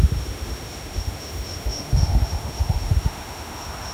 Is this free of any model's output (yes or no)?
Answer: no